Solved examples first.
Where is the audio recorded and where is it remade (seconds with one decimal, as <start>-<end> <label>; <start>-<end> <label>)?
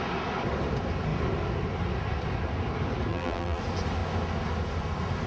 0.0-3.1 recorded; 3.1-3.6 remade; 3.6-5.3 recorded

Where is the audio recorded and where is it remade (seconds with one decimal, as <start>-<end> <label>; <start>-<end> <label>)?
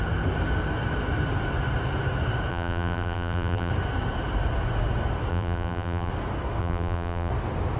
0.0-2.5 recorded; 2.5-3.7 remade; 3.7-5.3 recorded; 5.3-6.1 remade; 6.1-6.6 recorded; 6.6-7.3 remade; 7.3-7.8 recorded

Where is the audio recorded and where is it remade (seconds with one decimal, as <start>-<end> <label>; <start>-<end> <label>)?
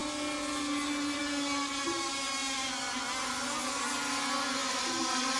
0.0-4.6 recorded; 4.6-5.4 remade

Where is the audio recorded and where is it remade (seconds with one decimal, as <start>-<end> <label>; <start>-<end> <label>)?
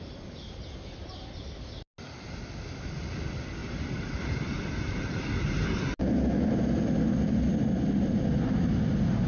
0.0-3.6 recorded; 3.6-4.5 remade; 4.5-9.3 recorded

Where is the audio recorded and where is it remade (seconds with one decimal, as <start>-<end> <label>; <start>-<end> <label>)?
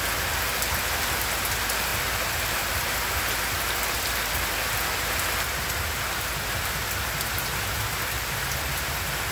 0.0-9.3 recorded